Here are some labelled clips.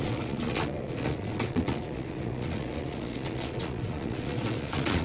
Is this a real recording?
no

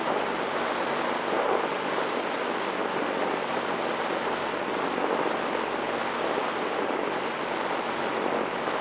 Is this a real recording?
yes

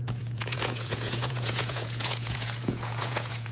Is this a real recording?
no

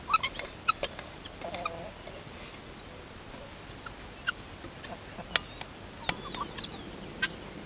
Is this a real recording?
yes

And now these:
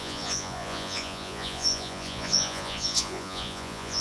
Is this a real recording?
no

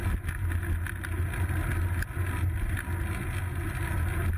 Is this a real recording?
yes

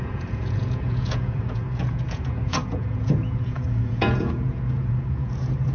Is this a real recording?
no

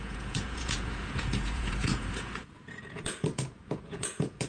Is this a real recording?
no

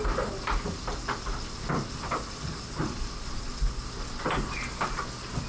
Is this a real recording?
yes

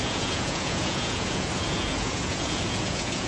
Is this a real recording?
no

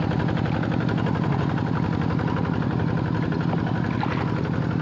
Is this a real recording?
yes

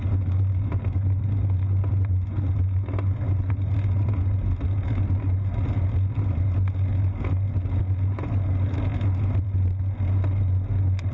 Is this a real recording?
yes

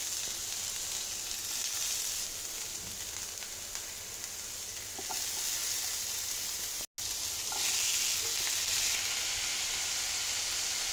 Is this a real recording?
yes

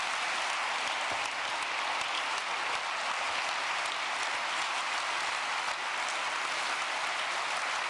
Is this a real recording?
yes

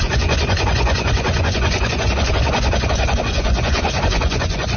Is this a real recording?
no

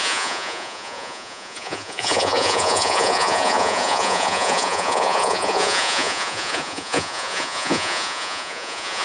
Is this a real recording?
no